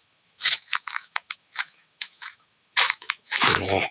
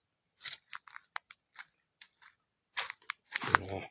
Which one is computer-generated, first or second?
first